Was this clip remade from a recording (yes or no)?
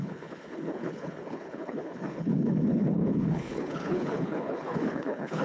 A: yes